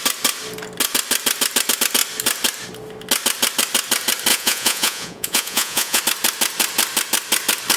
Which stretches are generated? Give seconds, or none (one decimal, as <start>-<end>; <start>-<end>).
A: 4.3-6.0